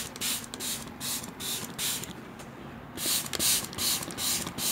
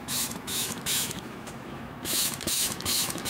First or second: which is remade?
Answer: second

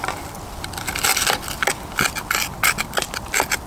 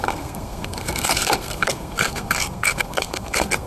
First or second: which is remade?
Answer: second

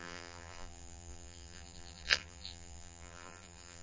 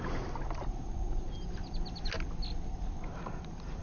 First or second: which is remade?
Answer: first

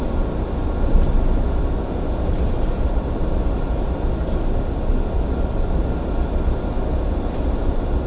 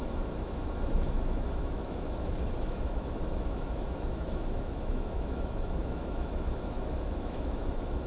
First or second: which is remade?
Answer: second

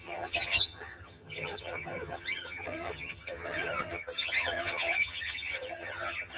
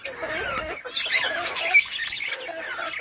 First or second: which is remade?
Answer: first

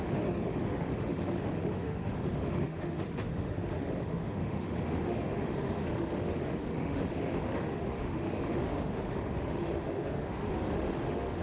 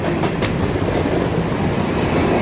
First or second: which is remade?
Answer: first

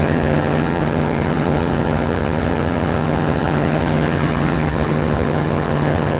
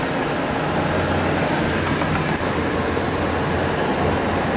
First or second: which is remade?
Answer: first